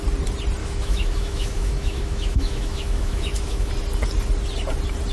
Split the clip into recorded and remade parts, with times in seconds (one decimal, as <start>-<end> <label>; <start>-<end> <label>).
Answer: 0.0-0.6 recorded; 0.6-3.7 remade; 3.7-5.1 recorded